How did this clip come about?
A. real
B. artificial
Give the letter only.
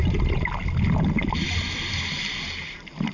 A